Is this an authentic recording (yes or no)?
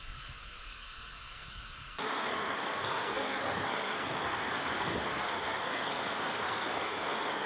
no